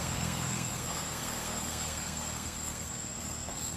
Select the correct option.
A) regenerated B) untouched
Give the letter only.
A